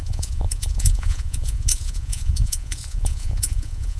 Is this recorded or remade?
remade